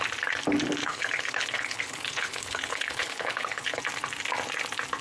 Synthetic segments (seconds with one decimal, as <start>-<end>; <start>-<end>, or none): 0.8-3.8